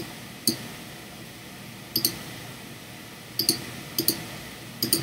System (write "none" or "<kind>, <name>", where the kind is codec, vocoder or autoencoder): none